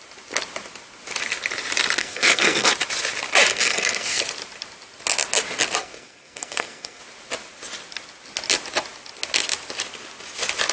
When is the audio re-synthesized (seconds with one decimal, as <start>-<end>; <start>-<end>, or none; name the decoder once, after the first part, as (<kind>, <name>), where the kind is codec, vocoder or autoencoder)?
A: 2.0-2.7 (codec, SNAC); 3.5-4.2; 5.8-7.0